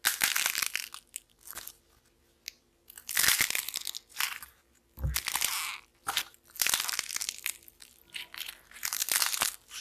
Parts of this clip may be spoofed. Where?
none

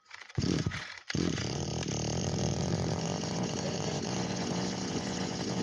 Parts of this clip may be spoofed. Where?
0.0-1.7 (vocoder, Vocos); 2.2-5.6

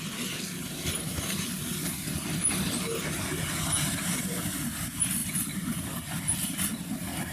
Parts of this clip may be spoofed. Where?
none